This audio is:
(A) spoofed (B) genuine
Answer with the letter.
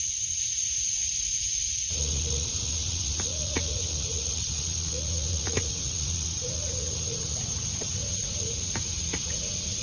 A